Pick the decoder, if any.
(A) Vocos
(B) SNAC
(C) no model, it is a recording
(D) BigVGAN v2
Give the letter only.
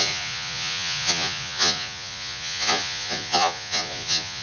A